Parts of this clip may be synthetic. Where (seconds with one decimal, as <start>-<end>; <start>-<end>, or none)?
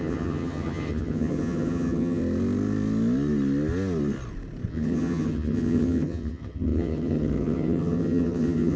0.0-2.2; 4.7-8.8